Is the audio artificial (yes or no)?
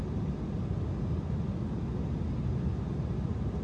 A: no